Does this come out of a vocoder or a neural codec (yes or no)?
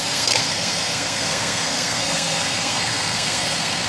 yes